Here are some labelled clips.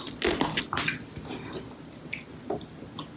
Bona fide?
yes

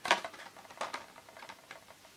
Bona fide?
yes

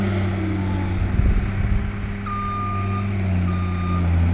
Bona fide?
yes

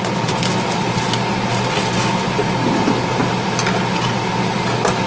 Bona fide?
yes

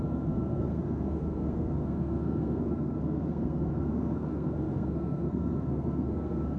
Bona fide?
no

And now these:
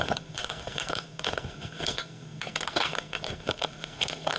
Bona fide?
no